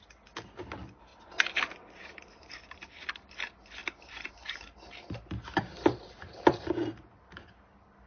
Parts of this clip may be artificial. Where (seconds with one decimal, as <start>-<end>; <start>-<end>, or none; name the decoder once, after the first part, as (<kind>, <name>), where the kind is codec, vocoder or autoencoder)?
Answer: 5.7-6.9 (vocoder, BigVGAN v2)